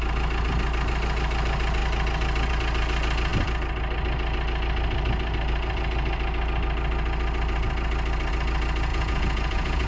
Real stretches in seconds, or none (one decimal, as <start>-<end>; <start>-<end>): 0.0-8.9